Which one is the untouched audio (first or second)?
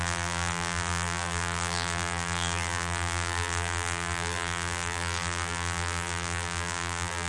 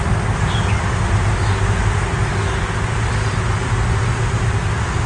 second